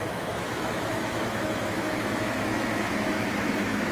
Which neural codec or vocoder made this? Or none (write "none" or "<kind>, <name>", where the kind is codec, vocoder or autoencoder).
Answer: autoencoder, DAC-VAE